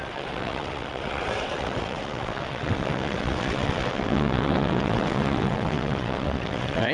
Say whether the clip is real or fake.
fake